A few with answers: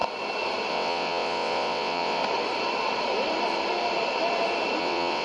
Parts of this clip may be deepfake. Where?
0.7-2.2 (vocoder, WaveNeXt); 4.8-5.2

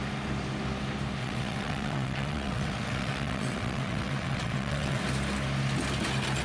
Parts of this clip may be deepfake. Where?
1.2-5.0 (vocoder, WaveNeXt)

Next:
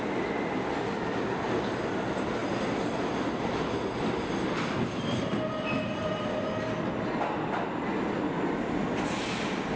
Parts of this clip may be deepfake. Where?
none